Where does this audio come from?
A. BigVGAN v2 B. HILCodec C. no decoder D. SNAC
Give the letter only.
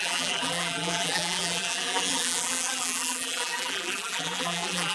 A